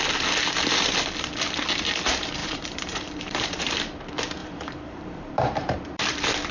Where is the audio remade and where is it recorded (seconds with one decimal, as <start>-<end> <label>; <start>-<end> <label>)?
0.0-2.4 recorded; 2.4-3.7 remade; 3.7-4.4 recorded; 4.4-5.3 remade; 5.3-6.5 recorded